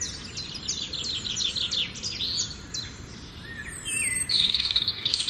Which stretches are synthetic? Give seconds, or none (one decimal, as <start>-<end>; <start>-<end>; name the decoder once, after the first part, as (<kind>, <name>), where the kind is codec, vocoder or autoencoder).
4.3-5.3 (codec, DAC)